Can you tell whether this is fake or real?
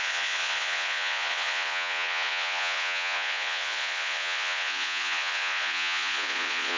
fake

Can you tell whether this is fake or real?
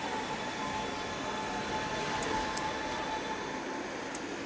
real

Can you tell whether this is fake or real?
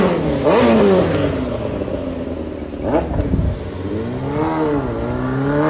real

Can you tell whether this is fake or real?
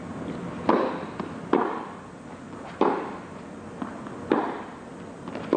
real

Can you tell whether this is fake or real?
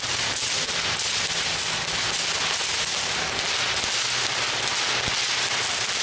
real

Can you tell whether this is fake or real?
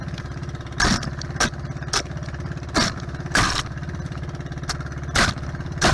real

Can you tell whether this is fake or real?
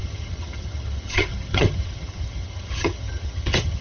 fake